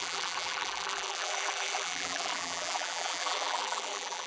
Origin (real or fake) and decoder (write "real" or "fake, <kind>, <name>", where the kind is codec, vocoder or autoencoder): fake, vocoder, BigVGAN v2